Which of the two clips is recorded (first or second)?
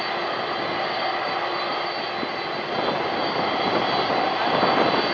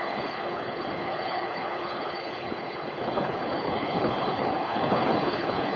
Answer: first